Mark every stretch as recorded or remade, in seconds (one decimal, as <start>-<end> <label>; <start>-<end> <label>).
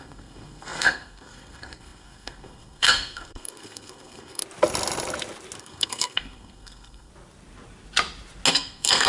0.0-4.4 remade; 4.4-5.6 recorded; 5.6-7.1 remade; 7.1-8.5 recorded; 8.5-9.1 remade